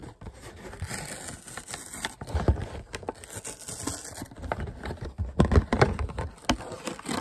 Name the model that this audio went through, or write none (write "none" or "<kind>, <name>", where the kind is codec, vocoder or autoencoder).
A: none